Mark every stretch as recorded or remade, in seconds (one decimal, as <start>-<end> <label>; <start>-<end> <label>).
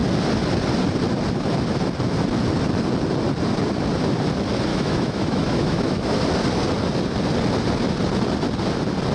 0.0-4.7 recorded; 4.7-6.2 remade; 6.2-9.1 recorded